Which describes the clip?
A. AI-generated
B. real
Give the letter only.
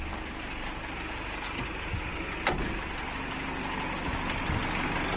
B